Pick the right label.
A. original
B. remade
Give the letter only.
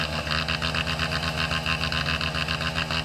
A